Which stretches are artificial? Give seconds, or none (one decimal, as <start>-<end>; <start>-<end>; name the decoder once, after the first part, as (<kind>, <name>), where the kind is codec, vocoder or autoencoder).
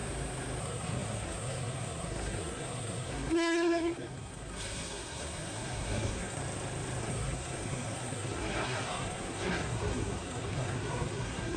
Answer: 0.6-6.4 (codec, SNAC); 7.0-11.6